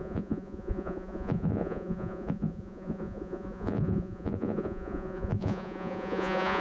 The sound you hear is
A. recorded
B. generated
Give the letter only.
B